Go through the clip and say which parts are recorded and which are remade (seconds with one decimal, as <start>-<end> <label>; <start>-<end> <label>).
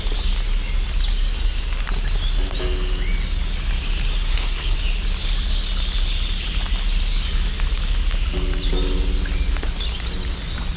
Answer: 0.0-4.1 recorded; 4.1-4.8 remade; 4.8-10.8 recorded